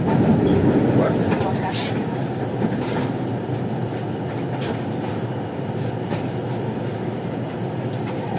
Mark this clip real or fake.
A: real